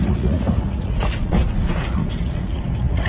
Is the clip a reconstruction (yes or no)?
yes